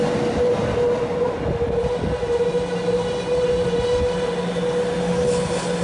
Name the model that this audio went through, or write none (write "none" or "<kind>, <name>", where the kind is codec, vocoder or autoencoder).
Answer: none